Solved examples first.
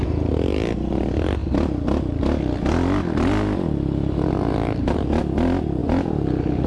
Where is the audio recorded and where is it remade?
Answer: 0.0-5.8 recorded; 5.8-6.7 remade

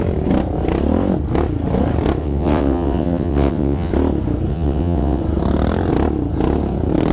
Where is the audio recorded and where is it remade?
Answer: 0.0-2.2 recorded; 2.2-3.9 remade; 3.9-4.5 recorded; 4.5-5.2 remade; 5.2-7.1 recorded

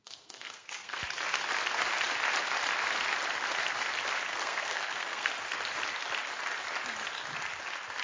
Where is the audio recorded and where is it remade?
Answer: 0.0-1.0 remade; 1.0-4.3 recorded; 4.3-5.3 remade; 5.3-8.0 recorded